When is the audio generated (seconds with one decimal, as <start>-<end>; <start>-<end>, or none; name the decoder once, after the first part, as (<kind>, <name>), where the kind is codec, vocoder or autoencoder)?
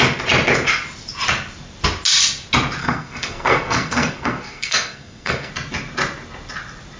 2.8-5.5 (codec, SNAC)